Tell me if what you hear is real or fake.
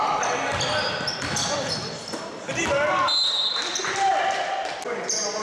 real